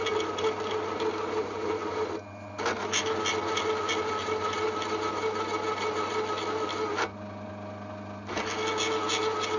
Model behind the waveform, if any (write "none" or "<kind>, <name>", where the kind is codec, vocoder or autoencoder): none